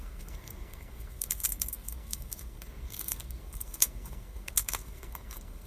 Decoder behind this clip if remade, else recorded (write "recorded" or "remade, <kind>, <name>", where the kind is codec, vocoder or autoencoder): remade, codec, SNAC